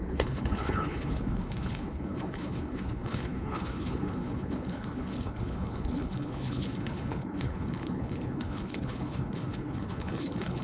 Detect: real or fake fake